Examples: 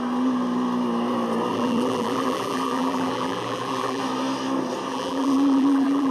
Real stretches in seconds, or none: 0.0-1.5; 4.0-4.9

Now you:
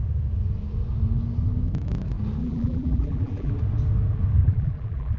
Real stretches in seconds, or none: 0.0-2.4; 3.5-4.4

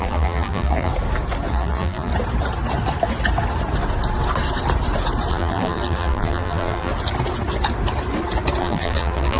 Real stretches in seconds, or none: 0.9-1.5; 2.1-5.3; 6.9-8.6

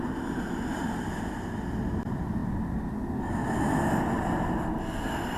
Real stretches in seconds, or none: 0.0-5.4

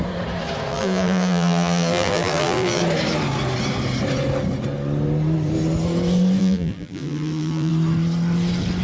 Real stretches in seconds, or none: 0.0-0.7; 2.8-6.4; 7.7-8.8

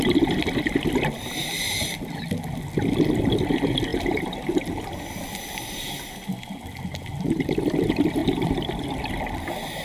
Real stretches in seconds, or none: 0.0-3.9; 4.5-8.2; 8.7-9.8